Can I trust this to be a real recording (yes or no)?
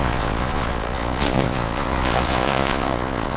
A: no